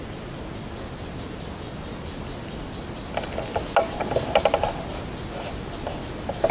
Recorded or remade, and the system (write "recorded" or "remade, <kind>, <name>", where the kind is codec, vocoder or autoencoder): recorded